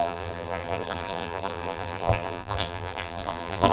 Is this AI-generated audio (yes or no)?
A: yes